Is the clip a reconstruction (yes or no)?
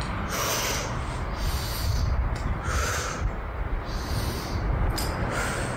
no